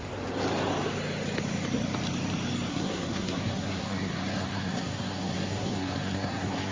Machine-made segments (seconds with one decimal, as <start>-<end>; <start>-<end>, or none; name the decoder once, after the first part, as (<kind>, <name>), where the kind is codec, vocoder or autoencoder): 2.7-6.7 (codec, SNAC)